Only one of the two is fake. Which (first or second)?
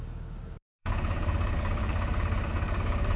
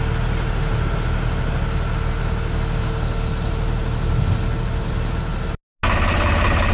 first